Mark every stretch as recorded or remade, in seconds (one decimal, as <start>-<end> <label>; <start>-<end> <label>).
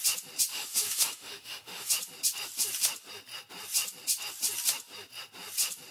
0.0-0.5 recorded; 0.5-1.9 remade; 1.9-5.9 recorded